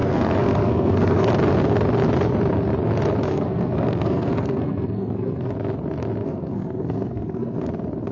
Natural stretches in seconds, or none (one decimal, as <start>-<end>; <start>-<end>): 1.3-3.3; 5.5-6.2; 7.6-8.1